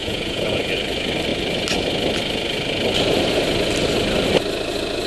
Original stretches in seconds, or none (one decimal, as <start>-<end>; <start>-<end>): 0.6-5.1